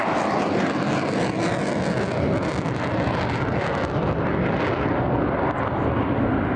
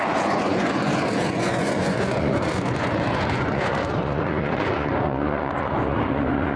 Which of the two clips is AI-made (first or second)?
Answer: second